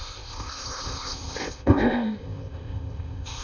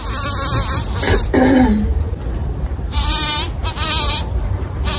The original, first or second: second